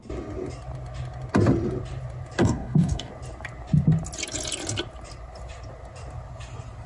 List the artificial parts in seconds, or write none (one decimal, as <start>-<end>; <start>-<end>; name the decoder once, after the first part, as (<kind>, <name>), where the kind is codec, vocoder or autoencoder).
2.4-3.1 (codec, DAC)